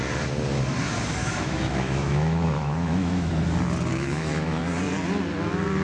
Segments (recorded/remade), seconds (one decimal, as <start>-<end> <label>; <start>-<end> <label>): 0.0-1.2 recorded; 1.2-3.3 remade; 3.3-3.9 recorded; 3.9-4.6 remade; 4.6-5.8 recorded

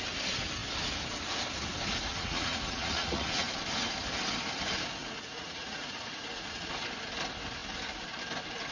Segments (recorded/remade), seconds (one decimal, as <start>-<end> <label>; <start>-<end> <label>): 0.0-2.1 recorded; 2.1-3.5 remade; 3.5-5.0 recorded; 5.0-6.7 remade; 6.7-8.7 recorded

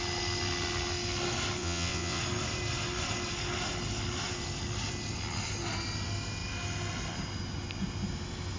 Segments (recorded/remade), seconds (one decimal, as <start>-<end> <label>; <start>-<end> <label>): 0.0-1.6 recorded; 1.6-2.2 remade; 2.2-8.6 recorded

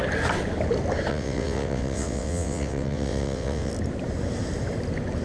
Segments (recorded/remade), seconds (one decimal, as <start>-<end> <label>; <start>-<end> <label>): 0.0-1.1 recorded; 1.1-3.7 remade; 3.7-5.2 recorded